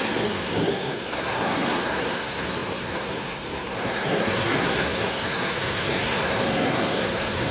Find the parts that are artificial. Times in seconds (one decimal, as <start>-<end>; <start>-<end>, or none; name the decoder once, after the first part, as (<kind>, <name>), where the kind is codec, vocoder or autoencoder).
0.0-7.5 (codec, SNAC)